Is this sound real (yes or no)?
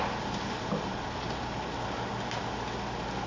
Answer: yes